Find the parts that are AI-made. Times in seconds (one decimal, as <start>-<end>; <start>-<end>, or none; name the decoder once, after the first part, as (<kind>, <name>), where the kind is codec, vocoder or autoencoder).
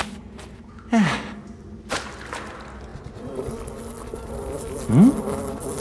none